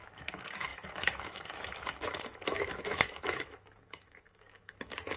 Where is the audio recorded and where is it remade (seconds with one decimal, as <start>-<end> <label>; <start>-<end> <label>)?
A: 0.0-5.2 remade